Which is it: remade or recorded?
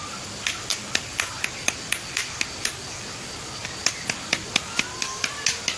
recorded